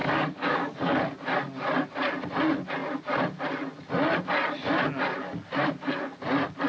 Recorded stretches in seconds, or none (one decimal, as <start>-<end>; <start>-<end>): 1.0-6.7